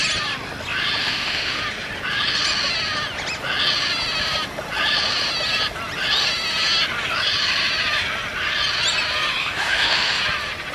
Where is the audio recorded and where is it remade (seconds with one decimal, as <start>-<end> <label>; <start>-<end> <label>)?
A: 0.0-1.0 recorded; 1.0-1.6 remade; 1.6-9.4 recorded; 9.4-10.2 remade; 10.2-10.7 recorded